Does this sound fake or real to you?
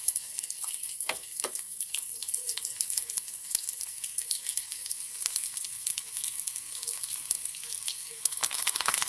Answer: fake